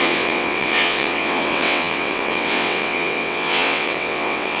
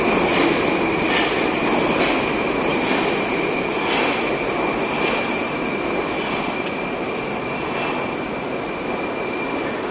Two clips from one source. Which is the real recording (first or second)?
second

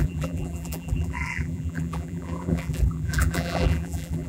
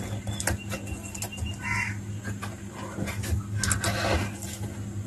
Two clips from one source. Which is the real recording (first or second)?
second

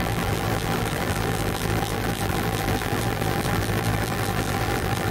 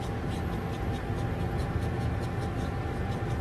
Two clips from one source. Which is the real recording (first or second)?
second